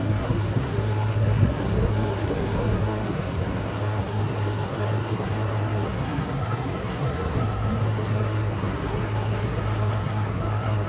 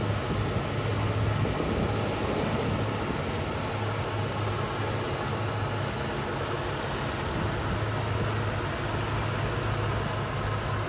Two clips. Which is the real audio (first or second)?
second